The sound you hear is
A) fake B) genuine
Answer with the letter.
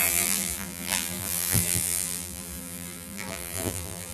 A